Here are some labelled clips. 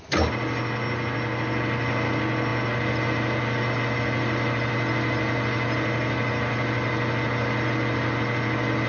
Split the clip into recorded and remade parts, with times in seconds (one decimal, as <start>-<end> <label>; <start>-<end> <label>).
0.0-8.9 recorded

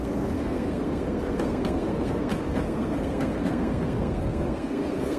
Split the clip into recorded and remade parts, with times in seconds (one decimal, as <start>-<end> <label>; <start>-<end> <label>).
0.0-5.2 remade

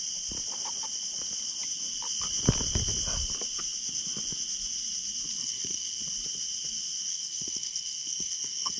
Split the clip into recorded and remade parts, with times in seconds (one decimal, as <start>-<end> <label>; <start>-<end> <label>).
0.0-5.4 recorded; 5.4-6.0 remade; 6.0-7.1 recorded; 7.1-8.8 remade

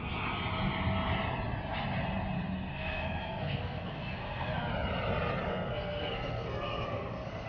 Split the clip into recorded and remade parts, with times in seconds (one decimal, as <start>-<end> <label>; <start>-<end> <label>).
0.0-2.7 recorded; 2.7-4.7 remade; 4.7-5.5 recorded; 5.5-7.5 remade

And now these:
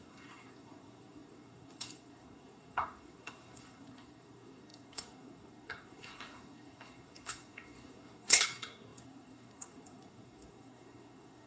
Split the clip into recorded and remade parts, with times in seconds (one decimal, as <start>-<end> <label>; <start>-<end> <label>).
0.0-11.5 remade